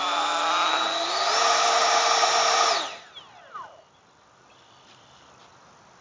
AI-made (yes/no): no